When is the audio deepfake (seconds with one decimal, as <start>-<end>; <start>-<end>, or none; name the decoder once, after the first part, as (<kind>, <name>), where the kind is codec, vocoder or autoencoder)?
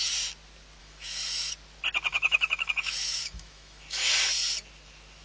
0.8-1.5 (autoencoder, DAC-VAE); 2.1-4.1